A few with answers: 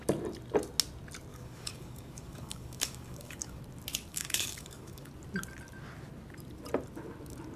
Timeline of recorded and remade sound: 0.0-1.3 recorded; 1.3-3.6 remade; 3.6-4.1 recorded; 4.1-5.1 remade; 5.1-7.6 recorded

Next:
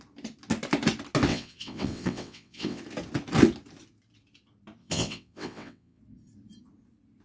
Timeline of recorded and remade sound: 0.0-1.3 recorded; 1.3-2.8 remade; 2.8-4.8 recorded; 4.8-6.0 remade; 6.0-7.2 recorded